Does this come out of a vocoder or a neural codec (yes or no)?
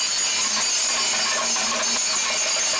no